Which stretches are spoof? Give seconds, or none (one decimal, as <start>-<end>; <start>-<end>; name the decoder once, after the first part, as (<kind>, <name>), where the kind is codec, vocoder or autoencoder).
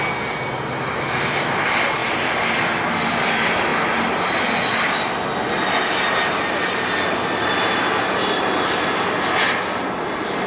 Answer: none